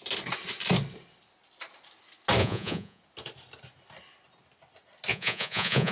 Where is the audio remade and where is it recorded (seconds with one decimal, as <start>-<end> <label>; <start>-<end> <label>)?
0.0-2.4 recorded; 2.4-3.0 remade; 3.0-5.1 recorded; 5.1-5.9 remade